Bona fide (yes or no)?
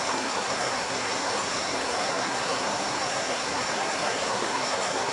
no